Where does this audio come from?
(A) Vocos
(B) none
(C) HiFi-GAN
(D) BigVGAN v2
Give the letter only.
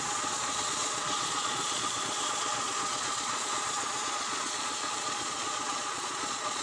A